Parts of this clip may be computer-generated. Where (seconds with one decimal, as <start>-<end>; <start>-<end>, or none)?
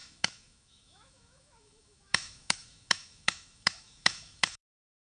0.0-5.0